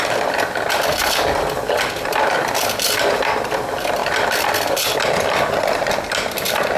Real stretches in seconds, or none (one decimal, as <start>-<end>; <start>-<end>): 0.0-6.8